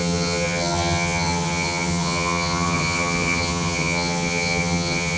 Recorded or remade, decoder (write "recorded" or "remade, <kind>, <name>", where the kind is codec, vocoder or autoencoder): remade, vocoder, HiFi-GAN